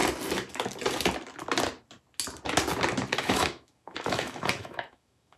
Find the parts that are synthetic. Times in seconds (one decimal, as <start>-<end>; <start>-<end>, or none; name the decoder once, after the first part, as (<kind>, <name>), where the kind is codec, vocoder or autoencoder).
3.2-5.4 (autoencoder, DAC-VAE)